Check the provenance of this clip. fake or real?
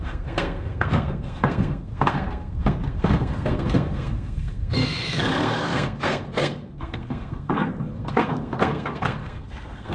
fake